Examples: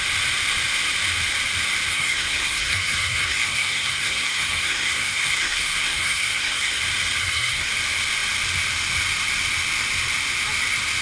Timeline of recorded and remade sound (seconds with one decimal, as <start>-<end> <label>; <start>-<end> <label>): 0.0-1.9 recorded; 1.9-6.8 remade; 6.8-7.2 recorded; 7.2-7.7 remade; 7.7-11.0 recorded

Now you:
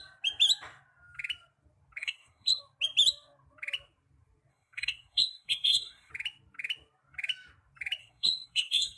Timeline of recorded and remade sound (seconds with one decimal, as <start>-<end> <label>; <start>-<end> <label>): 0.0-2.0 recorded; 2.0-2.6 remade; 2.6-4.5 recorded; 4.5-6.1 remade; 6.1-8.0 recorded; 8.0-9.0 remade

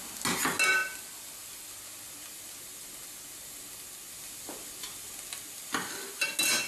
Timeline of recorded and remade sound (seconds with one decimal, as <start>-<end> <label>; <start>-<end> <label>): 0.0-6.7 recorded